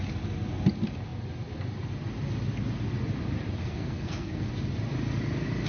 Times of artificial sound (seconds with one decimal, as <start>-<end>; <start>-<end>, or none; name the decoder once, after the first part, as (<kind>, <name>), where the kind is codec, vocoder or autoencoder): 3.6-4.5 (codec, SNAC)